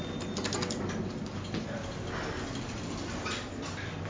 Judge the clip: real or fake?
real